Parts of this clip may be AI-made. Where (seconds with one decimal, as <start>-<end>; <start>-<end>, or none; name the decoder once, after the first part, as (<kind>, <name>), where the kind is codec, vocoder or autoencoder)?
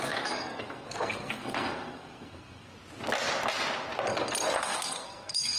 0.0-2.7 (codec, SNAC); 4.6-5.6